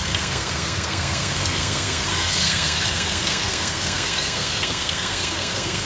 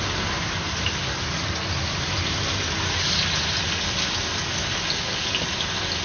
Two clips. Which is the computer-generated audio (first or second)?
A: first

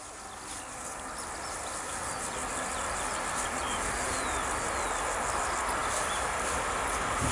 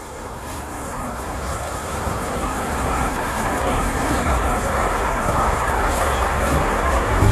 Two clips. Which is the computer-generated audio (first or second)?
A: second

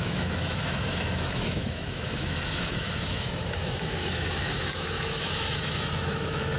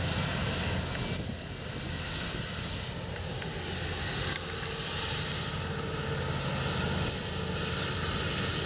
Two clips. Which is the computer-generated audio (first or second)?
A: first